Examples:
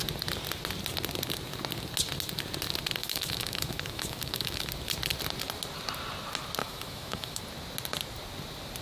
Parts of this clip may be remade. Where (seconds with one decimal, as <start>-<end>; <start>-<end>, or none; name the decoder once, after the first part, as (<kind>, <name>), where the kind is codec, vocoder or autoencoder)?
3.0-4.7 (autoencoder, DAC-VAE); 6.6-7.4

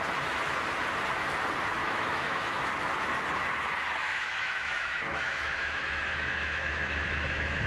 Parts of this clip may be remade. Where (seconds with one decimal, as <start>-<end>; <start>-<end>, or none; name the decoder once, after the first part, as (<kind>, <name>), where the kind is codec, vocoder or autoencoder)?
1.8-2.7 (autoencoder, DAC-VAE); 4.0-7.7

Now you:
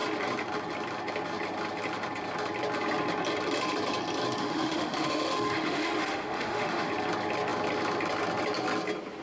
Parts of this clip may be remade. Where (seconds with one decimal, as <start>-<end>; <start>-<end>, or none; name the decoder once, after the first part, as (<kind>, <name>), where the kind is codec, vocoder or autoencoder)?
4.4-6.9 (autoencoder, DAC-VAE)

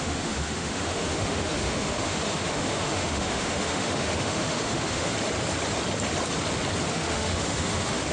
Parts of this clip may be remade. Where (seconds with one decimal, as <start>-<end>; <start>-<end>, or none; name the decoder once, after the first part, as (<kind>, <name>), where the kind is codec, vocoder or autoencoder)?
0.0-5.1 (autoencoder, DAC-VAE); 6.9-8.1

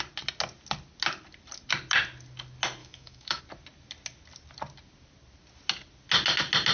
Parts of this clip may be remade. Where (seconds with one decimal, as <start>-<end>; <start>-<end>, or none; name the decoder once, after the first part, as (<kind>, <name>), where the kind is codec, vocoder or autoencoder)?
2.8-3.4 (autoencoder, DAC-VAE)

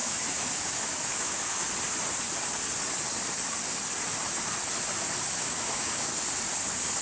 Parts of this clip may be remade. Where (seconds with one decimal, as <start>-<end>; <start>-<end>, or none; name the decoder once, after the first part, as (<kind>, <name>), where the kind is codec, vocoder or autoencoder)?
0.0-1.7 (autoencoder, DAC-VAE); 5.3-6.1